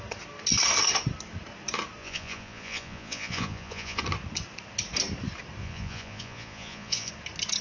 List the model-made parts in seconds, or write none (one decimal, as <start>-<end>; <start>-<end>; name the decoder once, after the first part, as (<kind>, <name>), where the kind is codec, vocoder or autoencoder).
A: 2.0-4.0 (vocoder, Vocos); 5.6-7.1